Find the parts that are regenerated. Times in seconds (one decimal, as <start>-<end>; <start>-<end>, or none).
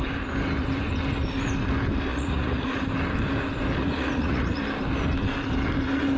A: 2.1-2.9; 3.8-4.6